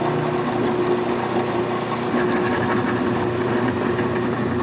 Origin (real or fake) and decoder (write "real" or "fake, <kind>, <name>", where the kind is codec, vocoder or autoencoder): real